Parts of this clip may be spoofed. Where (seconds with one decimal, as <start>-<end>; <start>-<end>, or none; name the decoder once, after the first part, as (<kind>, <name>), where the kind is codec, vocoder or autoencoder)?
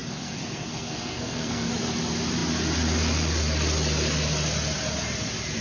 0.0-1.7 (codec, SNAC)